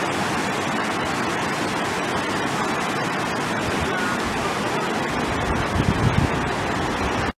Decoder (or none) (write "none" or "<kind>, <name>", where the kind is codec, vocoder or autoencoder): none